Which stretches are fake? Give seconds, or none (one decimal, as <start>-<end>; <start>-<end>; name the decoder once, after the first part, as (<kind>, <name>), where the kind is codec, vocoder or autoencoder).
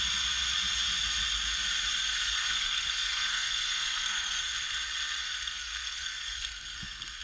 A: 2.0-4.4 (codec, SNAC); 5.2-7.2